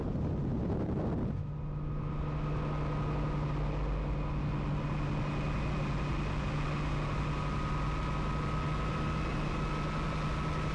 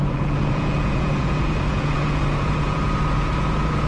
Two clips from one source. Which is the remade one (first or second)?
second